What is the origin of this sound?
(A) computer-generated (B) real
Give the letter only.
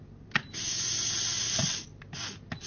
B